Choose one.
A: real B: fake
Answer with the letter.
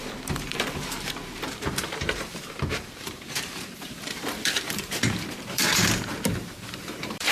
B